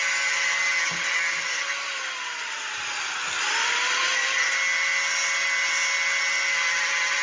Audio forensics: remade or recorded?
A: recorded